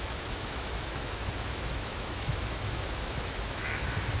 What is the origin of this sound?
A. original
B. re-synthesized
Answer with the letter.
B